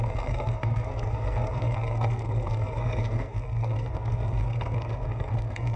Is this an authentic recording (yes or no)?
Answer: no